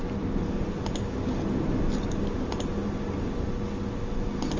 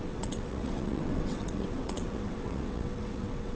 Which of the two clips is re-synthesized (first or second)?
second